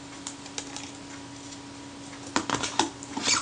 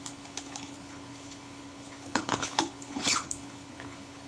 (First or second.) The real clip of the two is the first